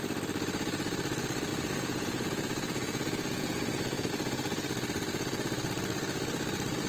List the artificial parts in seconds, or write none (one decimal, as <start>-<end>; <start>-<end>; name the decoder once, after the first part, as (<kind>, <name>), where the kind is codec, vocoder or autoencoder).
1.5-4.1 (vocoder, Vocos)